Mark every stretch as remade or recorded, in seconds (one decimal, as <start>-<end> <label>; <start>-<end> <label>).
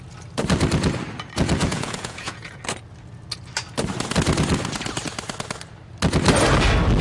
0.0-1.7 recorded; 1.7-2.6 remade; 2.6-7.0 recorded